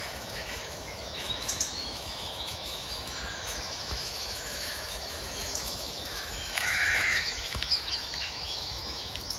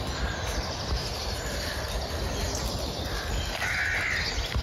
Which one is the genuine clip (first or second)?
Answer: second